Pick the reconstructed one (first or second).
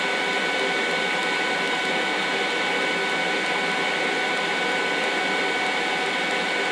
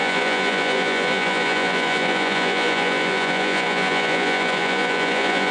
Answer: second